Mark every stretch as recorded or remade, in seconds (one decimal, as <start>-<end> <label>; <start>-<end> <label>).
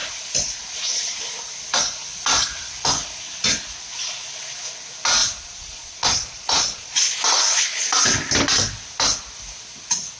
0.0-5.2 recorded; 5.2-7.0 remade; 7.0-10.2 recorded